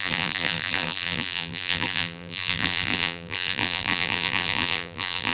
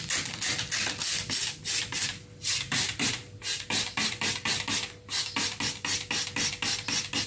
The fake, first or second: first